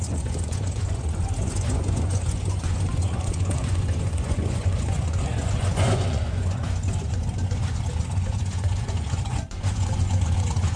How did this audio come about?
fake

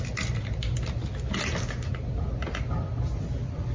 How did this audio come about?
real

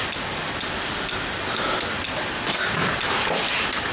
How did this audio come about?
real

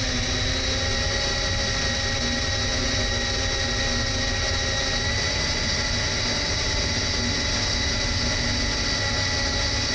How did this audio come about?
real